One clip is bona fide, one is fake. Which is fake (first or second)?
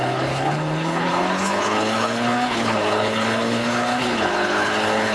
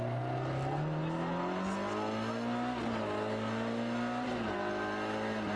first